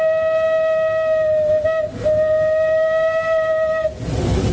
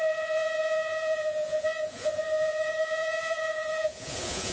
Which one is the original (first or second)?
first